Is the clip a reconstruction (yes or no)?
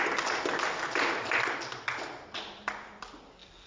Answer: no